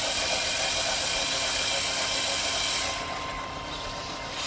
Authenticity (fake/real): real